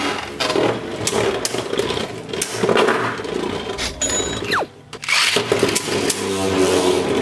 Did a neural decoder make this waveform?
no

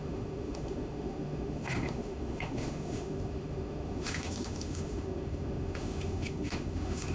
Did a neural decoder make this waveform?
yes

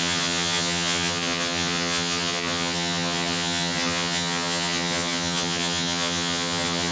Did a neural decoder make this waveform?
yes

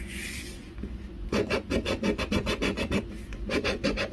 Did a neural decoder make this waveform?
yes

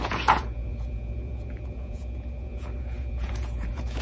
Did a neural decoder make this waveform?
yes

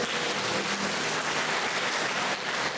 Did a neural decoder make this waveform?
no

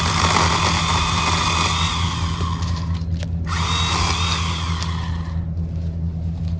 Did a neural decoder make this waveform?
no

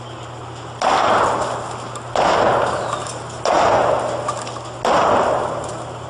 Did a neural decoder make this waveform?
no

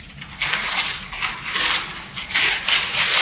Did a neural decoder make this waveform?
no